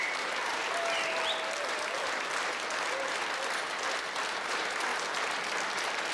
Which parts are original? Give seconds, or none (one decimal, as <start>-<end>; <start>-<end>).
0.6-4.3; 4.9-6.1